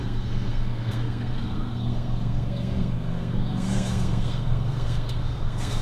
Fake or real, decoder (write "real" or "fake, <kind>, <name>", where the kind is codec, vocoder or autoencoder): fake, codec, SNAC